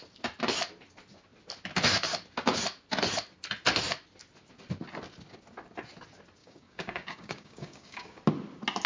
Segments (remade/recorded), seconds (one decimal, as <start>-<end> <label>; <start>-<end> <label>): 0.0-6.4 recorded; 6.4-8.2 remade; 8.2-8.9 recorded